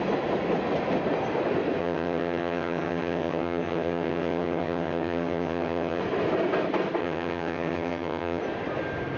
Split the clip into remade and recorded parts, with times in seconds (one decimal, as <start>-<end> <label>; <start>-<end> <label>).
0.0-1.8 recorded; 1.8-6.0 remade; 6.0-7.0 recorded; 7.0-8.4 remade; 8.4-9.2 recorded